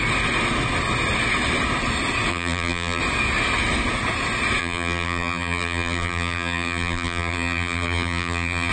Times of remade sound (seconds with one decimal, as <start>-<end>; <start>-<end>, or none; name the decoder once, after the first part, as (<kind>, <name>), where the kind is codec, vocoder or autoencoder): 2.3-3.0 (vocoder, BigVGAN v2); 4.6-8.7